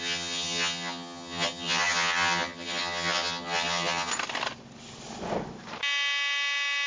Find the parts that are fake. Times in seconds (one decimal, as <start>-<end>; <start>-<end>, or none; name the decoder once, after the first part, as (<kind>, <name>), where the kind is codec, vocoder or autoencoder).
0.0-4.1 (vocoder, HiFi-GAN)